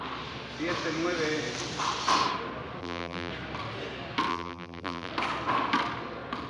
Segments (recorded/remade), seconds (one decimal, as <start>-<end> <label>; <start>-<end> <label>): 0.0-2.8 recorded; 2.8-3.3 remade; 3.3-4.3 recorded; 4.3-5.1 remade; 5.1-6.5 recorded